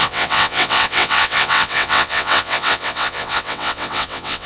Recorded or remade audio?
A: remade